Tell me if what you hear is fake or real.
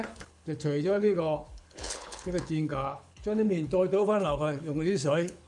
fake